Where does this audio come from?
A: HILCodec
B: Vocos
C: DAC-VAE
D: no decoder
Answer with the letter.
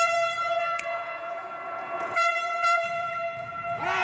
B